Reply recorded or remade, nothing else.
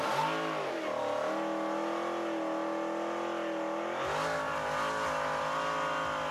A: recorded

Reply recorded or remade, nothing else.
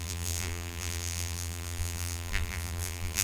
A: remade